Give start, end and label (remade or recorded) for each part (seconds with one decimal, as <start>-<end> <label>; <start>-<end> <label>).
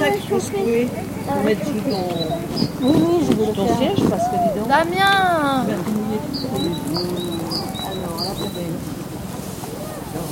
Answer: 0.0-2.4 remade; 2.4-6.9 recorded; 6.9-8.0 remade; 8.0-8.7 recorded; 8.7-10.3 remade